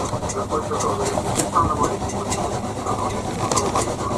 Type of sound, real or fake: real